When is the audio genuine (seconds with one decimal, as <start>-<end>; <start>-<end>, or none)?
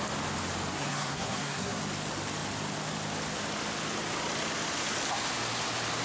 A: 0.0-0.7; 1.8-6.0